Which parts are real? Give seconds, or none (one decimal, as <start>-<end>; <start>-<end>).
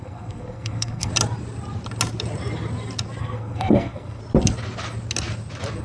1.1-3.2; 4.2-5.8